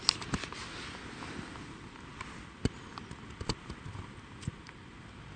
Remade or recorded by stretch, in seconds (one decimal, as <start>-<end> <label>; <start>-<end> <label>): 0.0-5.4 recorded